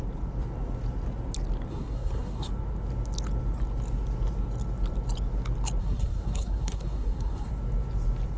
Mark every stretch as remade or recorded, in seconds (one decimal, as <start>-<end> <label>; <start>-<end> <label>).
0.0-1.7 recorded; 1.7-2.5 remade; 2.5-5.8 recorded; 5.8-7.5 remade; 7.5-8.4 recorded